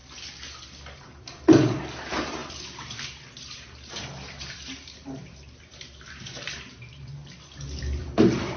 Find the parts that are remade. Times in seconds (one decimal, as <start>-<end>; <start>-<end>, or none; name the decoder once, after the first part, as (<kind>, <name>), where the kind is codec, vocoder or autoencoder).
1.0-7.2 (vocoder, BigVGAN v2); 8.0-8.6